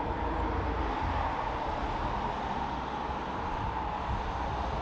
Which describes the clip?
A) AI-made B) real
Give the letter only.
B